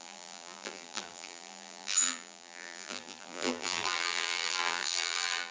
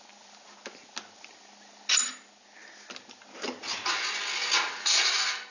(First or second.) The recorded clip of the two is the second